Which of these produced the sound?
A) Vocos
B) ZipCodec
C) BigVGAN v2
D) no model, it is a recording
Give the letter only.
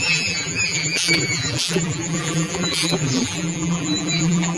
C